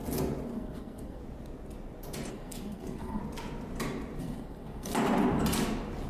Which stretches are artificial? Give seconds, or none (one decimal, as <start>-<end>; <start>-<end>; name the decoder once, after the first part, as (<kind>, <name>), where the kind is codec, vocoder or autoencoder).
0.5-1.2 (codec, SNAC); 2.3-3.2; 4.2-4.9